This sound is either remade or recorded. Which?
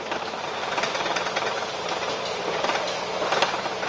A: recorded